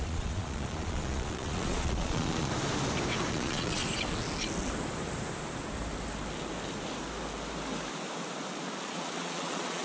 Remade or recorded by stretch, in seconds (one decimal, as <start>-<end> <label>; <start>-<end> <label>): 0.0-2.5 remade; 2.5-3.3 recorded; 3.3-3.8 remade; 3.8-8.8 recorded; 8.8-9.8 remade